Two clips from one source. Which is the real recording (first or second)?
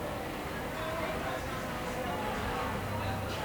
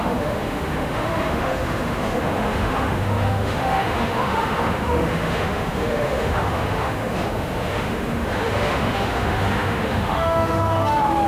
first